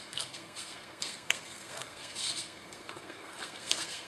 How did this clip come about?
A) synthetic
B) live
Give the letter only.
A